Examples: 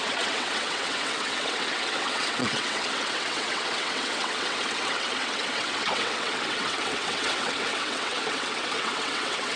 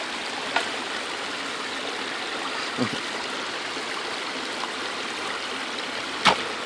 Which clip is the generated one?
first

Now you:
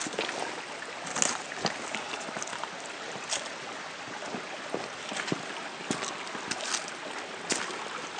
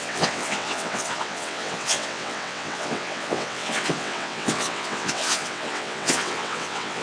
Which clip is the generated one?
second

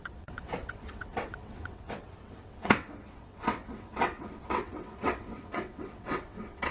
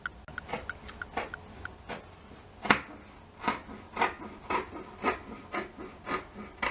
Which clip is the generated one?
first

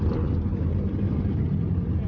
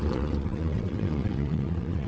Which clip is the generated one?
second